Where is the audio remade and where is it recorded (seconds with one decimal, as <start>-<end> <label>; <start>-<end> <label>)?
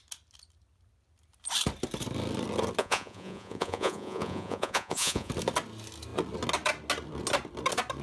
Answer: 0.0-2.8 recorded; 2.8-5.3 remade; 5.3-8.0 recorded